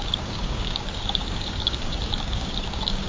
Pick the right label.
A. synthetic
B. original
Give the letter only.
A